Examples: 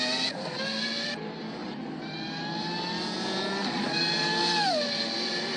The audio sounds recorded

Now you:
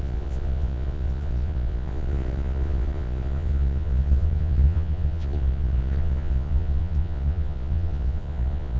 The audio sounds remade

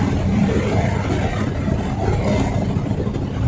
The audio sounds recorded